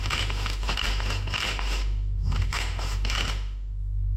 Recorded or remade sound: remade